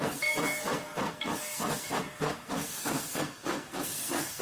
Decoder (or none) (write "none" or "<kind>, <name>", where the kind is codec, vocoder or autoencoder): codec, SNAC